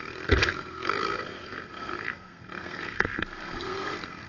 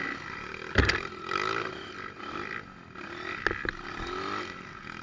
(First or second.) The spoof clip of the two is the first